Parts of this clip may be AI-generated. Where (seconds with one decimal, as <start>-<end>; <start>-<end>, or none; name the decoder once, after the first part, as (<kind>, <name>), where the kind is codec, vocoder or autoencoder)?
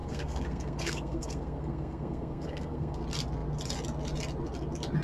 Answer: 0.0-3.0 (codec, SNAC)